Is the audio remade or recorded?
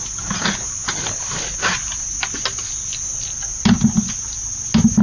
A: recorded